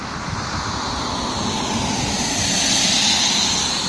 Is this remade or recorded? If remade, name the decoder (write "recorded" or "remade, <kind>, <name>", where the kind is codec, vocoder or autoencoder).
recorded